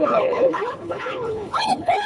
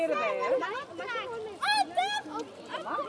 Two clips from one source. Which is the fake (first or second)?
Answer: first